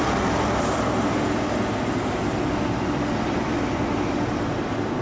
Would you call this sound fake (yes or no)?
no